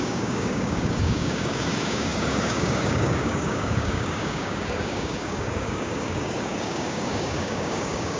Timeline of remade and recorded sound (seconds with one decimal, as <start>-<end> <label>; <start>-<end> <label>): 0.0-8.2 remade